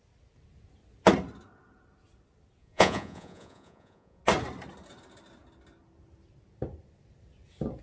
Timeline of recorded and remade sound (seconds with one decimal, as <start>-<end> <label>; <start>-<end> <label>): 0.0-2.6 recorded; 2.6-4.2 remade; 4.2-7.8 recorded